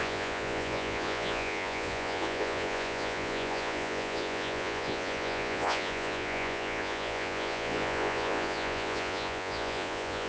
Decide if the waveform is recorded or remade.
remade